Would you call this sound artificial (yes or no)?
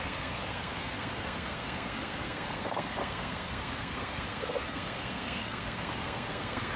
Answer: yes